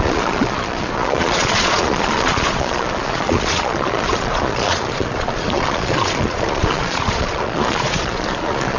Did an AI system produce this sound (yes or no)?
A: yes